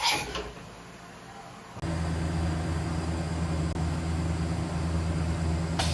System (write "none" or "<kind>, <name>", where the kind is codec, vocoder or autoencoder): none